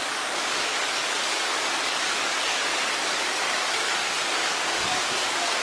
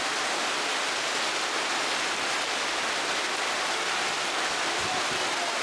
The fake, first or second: first